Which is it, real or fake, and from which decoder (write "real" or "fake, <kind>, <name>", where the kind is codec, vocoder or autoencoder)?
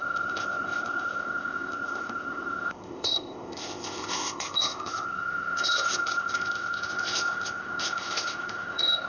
fake, codec, ZipCodec